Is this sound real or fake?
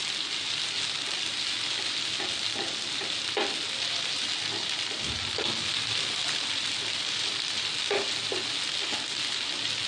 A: real